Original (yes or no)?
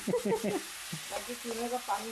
yes